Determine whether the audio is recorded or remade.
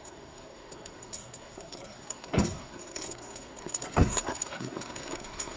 remade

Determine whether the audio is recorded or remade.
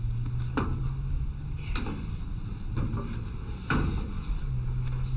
recorded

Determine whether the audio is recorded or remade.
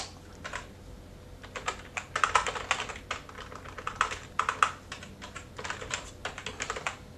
recorded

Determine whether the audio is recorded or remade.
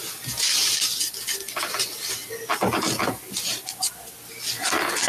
recorded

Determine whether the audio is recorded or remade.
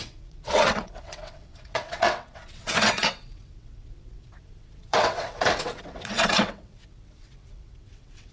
remade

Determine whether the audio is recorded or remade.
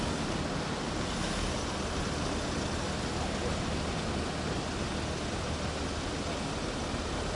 recorded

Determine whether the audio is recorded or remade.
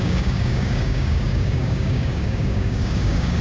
remade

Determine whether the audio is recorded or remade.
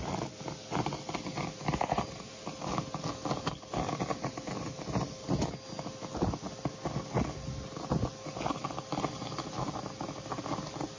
recorded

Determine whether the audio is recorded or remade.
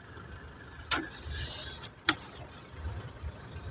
recorded